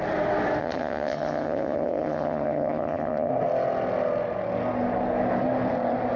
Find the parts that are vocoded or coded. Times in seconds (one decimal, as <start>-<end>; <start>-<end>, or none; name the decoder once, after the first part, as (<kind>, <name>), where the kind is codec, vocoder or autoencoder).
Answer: 0.6-3.3 (vocoder, HiFi-GAN)

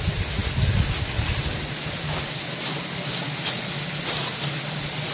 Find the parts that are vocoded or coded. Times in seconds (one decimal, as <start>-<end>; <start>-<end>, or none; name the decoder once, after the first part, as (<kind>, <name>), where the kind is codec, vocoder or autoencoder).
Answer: none

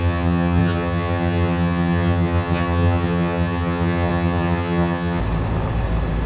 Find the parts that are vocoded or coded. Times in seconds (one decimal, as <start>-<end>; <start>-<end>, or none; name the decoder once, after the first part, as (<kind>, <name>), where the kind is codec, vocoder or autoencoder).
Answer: 0.0-5.2 (vocoder, HiFi-GAN)

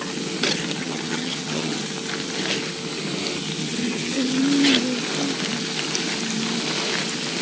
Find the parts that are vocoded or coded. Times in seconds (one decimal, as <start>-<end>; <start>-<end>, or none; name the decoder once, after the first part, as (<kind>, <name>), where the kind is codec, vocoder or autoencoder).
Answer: 0.8-1.8 (vocoder, HiFi-GAN); 3.6-4.3

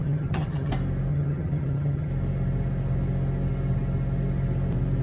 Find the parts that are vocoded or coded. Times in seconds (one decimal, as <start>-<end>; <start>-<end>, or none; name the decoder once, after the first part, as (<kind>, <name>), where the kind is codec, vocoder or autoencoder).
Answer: 0.0-0.7 (vocoder, HiFi-GAN); 1.1-2.1

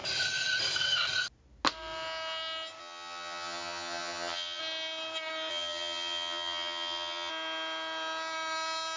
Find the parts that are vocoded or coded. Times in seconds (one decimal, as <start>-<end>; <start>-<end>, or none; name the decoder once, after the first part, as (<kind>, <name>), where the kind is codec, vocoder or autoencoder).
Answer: 2.8-4.6 (vocoder, HiFi-GAN); 5.5-7.3

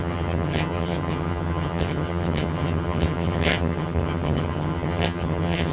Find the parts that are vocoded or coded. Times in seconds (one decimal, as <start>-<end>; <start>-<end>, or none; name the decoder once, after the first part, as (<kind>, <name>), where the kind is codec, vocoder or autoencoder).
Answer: 0.0-5.7 (vocoder, HiFi-GAN)